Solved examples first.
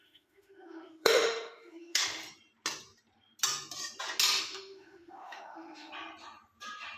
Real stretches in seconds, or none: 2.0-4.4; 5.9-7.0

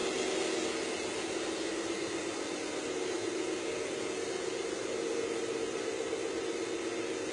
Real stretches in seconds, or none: 0.0-7.3